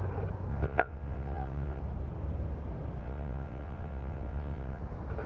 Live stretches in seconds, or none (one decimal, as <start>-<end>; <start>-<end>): 0.0-0.5; 1.8-3.0; 4.8-5.3